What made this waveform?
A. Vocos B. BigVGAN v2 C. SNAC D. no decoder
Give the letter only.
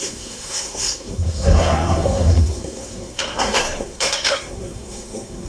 C